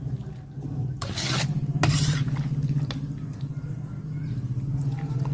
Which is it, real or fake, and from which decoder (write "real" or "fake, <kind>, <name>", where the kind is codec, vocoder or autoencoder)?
real